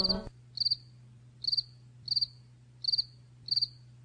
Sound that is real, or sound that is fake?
real